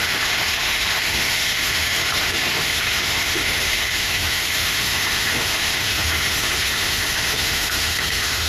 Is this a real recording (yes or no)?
no